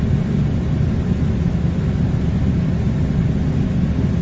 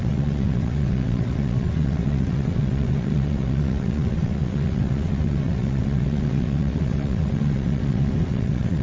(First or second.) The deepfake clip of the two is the second